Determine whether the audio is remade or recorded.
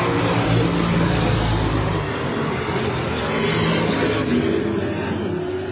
recorded